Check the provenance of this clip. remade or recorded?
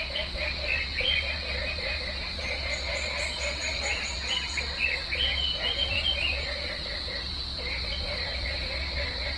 remade